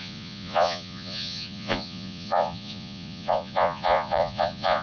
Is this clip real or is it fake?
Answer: fake